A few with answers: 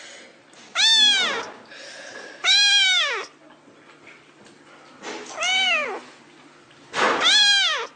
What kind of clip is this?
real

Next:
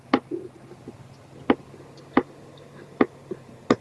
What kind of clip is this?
real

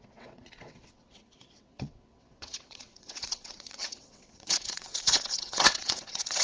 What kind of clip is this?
fake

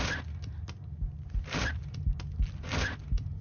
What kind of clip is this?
real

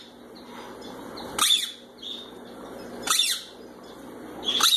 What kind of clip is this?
real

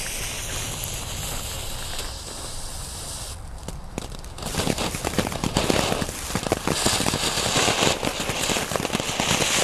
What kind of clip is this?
real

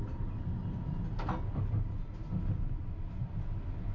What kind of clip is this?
real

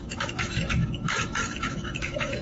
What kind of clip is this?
fake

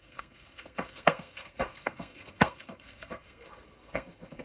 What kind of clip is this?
fake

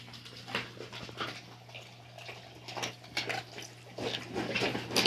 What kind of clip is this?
real